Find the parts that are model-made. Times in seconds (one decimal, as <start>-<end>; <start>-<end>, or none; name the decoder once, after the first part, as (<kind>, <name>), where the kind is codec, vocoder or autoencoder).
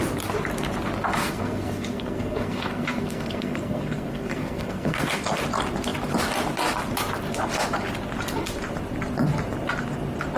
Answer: 1.2-5.4 (codec, SNAC)